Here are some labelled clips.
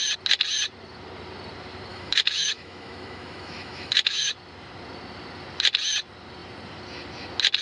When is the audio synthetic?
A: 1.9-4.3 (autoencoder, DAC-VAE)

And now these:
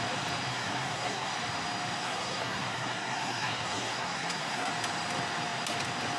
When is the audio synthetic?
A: 0.5-1.3 (codec, SNAC); 2.0-4.7

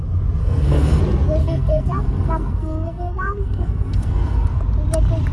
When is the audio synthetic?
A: 0.4-1.0 (codec, SNAC); 1.4-4.6

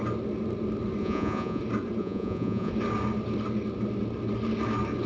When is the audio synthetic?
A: 1.0-1.6 (vocoder, Vocos); 2.0-2.7

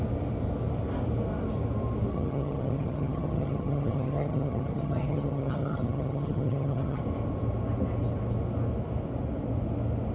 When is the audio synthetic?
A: 2.1-7.0 (vocoder, HiFi-GAN)

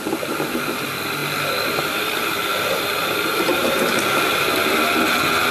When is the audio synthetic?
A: 3.3-3.8 (vocoder, BigVGAN v2)